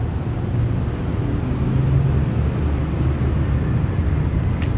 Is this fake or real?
real